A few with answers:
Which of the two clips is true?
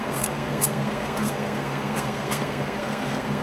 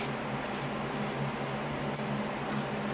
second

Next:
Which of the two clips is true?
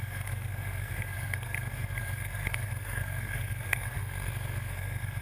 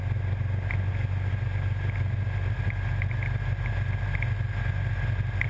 second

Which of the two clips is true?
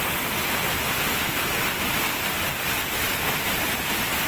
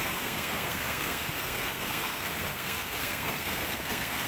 first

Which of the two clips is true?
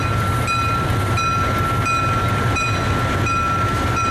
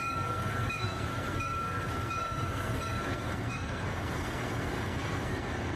first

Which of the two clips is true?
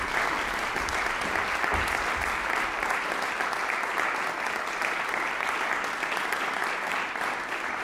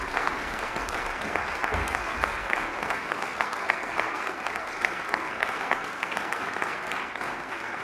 first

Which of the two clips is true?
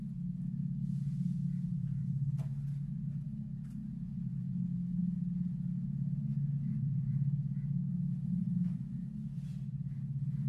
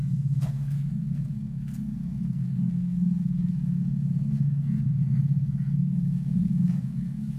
first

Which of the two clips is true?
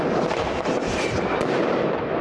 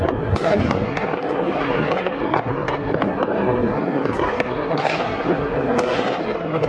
first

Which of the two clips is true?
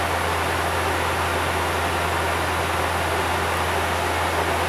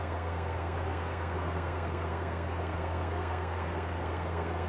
first